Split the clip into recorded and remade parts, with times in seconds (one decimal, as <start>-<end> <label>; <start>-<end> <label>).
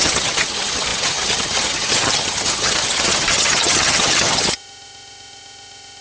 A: 0.0-6.0 remade